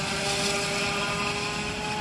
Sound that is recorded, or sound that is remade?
recorded